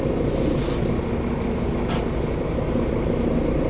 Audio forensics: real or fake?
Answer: real